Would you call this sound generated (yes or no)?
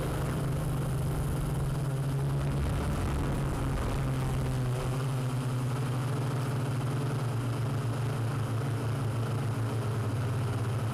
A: no